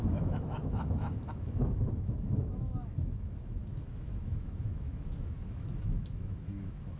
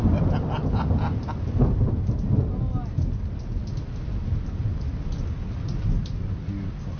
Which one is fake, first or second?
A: first